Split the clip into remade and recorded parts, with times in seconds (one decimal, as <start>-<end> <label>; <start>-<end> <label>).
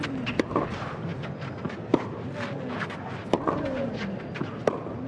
0.0-5.1 recorded